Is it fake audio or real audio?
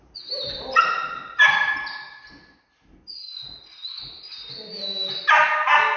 real